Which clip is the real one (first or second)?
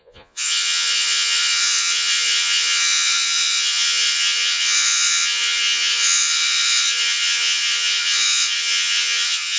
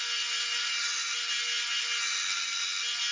second